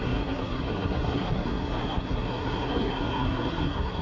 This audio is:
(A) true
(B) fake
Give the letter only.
B